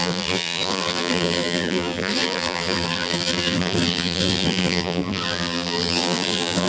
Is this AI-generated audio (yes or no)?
yes